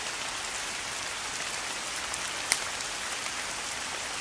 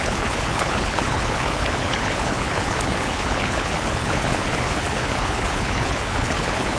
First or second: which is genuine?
first